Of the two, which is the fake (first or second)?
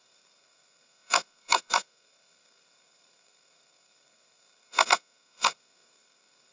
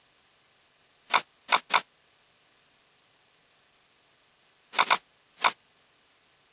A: first